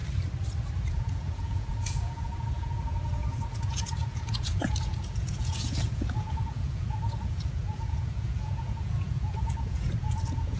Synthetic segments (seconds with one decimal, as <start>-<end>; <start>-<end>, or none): 0.9-10.6